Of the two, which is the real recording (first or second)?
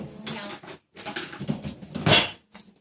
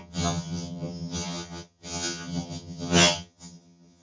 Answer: first